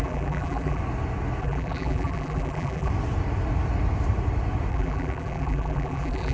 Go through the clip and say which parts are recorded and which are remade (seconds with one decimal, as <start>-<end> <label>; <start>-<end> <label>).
0.0-0.8 remade; 0.8-1.4 recorded; 1.4-2.9 remade; 2.9-4.7 recorded; 4.7-6.3 remade